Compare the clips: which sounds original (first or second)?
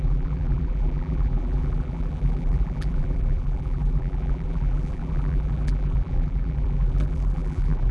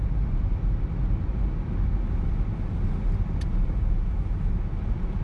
second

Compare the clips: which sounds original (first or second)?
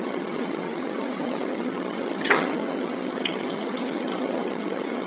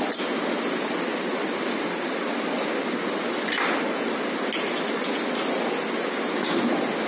second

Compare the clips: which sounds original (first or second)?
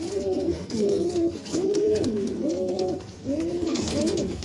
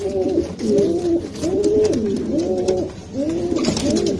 second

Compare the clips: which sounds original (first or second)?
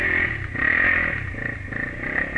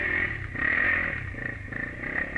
first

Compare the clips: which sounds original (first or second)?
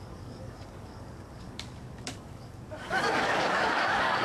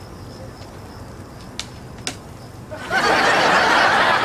second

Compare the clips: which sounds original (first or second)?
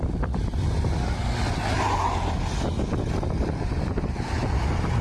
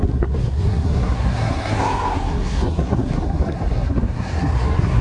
first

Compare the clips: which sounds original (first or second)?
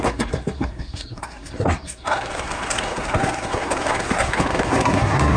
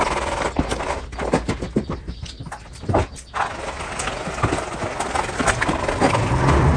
second